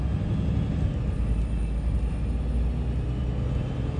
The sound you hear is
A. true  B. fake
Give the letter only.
A